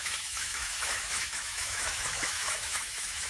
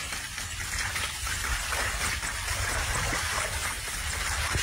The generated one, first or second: first